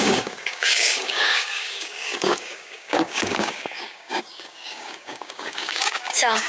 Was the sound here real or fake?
fake